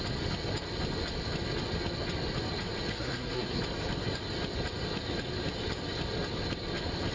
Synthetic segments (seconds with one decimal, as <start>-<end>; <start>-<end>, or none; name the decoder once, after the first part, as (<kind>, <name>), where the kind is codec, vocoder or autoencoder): 2.9-3.6 (codec, SNAC)